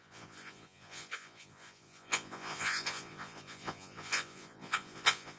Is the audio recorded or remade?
remade